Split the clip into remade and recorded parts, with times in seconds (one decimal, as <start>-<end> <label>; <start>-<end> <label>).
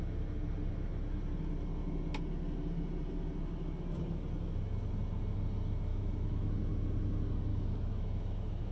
0.0-5.9 recorded; 5.9-6.5 remade; 6.5-7.5 recorded; 7.5-8.7 remade